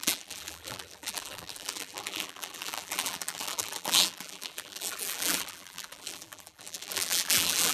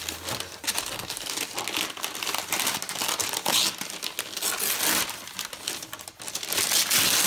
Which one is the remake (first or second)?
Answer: first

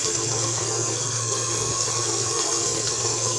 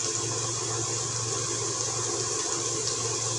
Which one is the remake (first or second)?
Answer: first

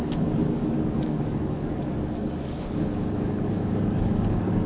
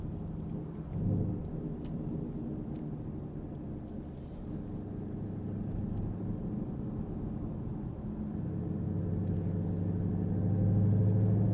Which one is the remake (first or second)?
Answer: first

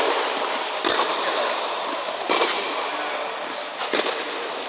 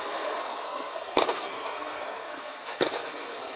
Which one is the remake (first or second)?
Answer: second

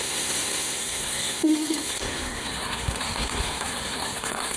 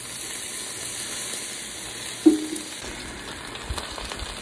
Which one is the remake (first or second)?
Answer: first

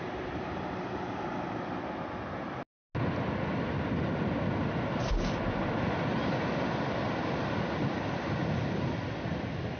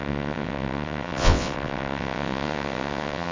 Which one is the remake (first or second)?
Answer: second